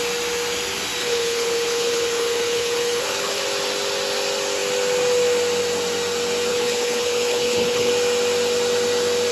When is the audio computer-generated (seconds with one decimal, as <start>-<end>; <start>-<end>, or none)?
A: 1.0-3.4; 6.5-7.9